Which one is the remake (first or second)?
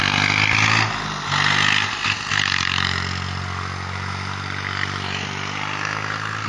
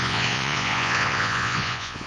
second